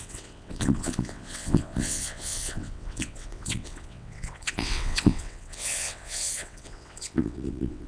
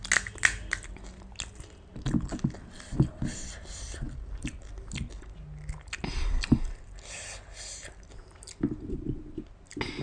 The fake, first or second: first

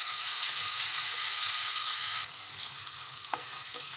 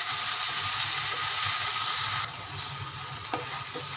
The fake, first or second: first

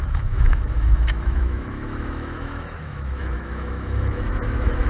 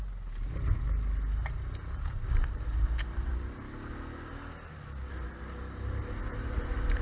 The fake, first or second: first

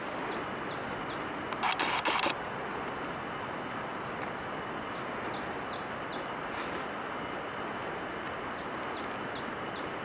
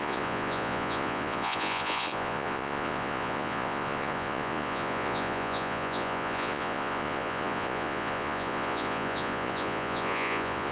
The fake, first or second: second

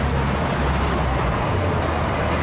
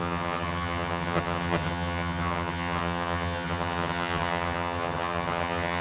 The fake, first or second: second